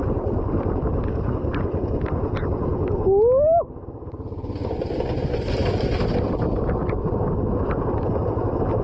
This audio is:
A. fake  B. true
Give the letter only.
B